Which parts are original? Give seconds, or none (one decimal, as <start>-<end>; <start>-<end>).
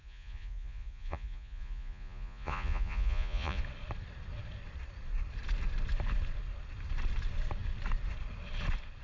3.6-9.0